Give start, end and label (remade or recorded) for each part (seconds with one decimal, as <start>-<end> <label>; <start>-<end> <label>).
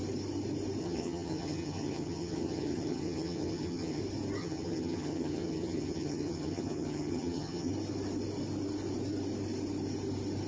0.0-0.8 recorded; 0.8-4.0 remade; 4.0-4.4 recorded; 4.4-7.7 remade; 7.7-10.5 recorded